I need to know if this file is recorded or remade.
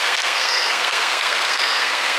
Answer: remade